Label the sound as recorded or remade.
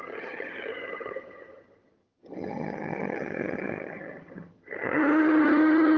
remade